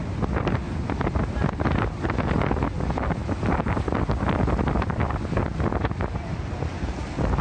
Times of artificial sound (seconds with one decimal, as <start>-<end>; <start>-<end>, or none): none